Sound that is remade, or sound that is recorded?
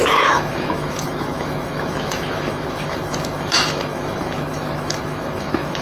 remade